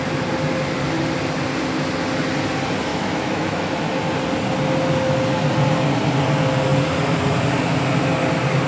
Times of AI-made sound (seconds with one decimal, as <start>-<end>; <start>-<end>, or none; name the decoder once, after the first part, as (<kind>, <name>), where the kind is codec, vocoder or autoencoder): 2.9-3.7 (autoencoder, DAC-VAE)